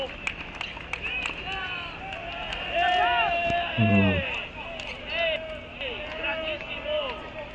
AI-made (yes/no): no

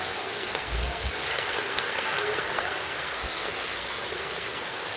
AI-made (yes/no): yes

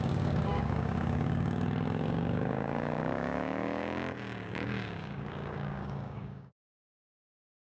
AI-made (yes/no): yes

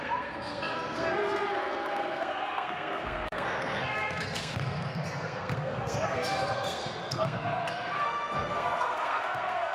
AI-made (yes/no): yes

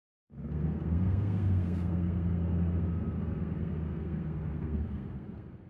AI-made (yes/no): yes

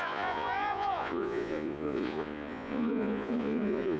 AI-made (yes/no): yes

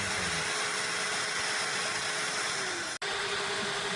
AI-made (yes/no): no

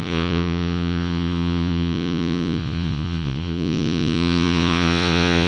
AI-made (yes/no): yes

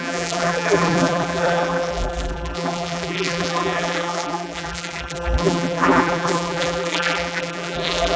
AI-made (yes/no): yes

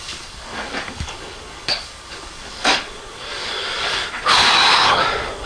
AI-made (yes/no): yes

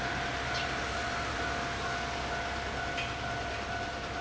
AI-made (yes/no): no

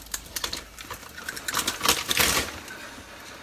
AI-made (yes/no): yes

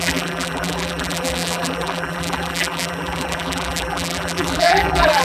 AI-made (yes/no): yes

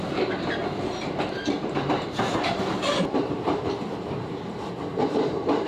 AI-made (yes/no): yes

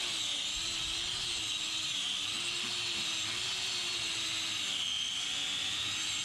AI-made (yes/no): yes